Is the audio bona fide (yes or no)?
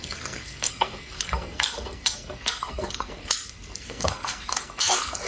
no